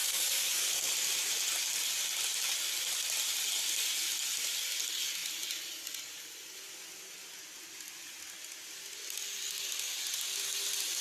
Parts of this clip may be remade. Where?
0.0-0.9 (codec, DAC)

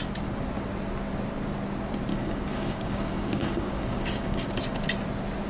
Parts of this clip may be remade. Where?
2.1-4.5 (codec, DAC)

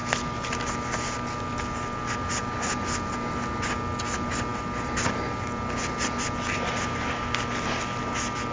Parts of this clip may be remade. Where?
none

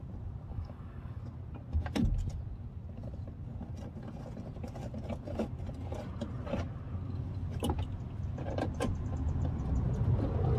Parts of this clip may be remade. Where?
0.5-1.2 (codec, DAC)

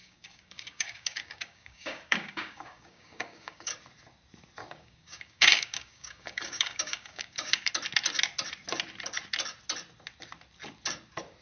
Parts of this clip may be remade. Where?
0.0-3.7 (codec, DAC); 4.6-7.7

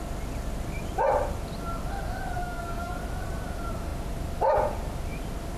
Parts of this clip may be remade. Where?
2.4-2.9 (codec, DAC)

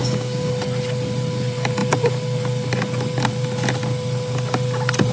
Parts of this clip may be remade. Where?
0.0-0.5 (codec, DAC)